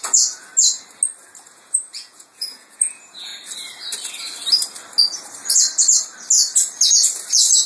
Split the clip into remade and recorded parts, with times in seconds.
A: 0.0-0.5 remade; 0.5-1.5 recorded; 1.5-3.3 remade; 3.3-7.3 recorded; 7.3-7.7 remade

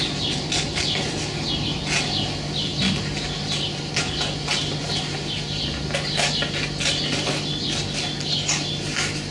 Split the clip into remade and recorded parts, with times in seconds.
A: 0.0-9.3 recorded

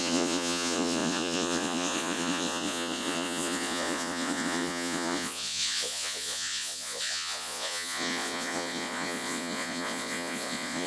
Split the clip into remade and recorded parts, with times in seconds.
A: 0.0-10.9 remade